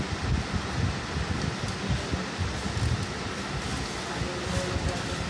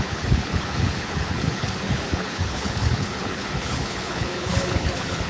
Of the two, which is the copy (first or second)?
second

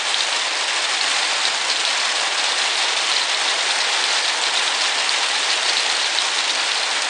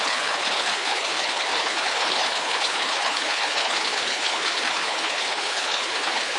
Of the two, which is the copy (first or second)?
second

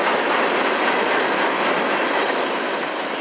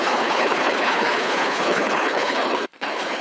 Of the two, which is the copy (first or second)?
second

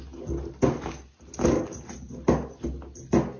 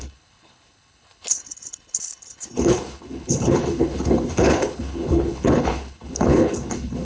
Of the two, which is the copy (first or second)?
second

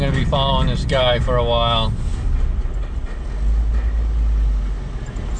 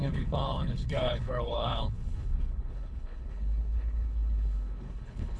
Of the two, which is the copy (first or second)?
second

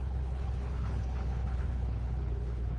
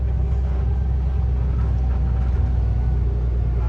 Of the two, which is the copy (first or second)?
first